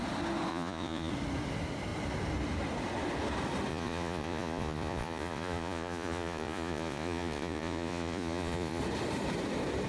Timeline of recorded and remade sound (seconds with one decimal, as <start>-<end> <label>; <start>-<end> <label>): 0.0-0.5 recorded; 0.5-1.1 remade; 1.1-3.7 recorded; 3.7-8.8 remade; 8.8-9.9 recorded